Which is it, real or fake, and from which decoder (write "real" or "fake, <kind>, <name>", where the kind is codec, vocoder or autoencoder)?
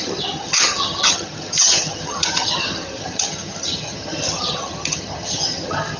fake, vocoder, HiFi-GAN